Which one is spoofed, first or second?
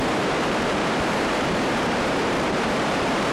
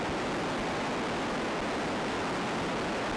first